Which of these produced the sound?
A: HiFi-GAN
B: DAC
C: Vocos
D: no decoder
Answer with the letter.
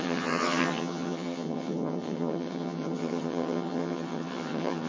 A